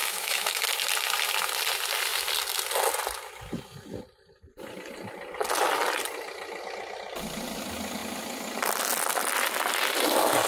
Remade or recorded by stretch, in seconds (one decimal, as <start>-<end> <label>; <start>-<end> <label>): 0.0-0.6 remade; 0.6-10.5 recorded